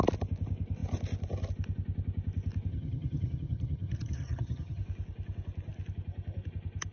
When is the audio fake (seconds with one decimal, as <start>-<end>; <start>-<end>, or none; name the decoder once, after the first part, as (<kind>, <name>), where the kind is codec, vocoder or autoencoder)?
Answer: 2.7-4.8 (vocoder, HiFi-GAN)